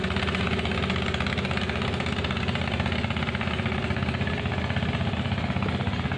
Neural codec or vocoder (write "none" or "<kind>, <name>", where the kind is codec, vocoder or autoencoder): none